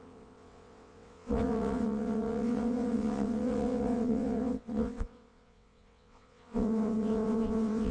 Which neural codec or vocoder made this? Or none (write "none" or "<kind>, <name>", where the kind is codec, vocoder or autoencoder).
vocoder, WaveNeXt